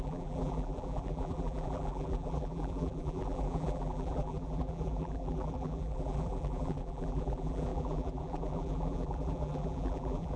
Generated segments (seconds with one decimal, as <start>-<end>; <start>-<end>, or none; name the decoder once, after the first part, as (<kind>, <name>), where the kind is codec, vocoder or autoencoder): 0.0-10.4 (vocoder, BigVGAN v2)